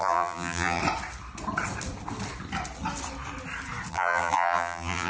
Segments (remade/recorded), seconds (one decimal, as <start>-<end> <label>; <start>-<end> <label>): 0.0-0.8 remade; 0.8-3.9 recorded; 3.9-5.1 remade